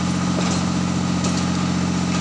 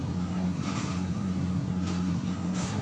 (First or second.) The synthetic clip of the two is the second